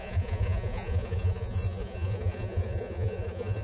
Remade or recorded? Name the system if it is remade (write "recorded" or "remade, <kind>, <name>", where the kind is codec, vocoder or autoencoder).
remade, vocoder, Vocos